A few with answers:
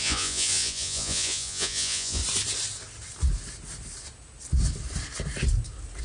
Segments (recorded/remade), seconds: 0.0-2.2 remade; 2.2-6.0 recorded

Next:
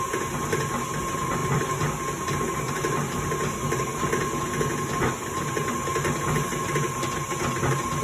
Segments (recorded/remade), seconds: 0.0-8.0 recorded

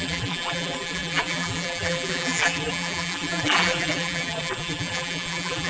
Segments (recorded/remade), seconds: 0.0-5.7 remade

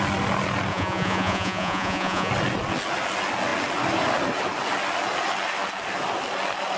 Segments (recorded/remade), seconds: 0.0-0.7 recorded; 0.7-2.3 remade; 2.3-6.8 recorded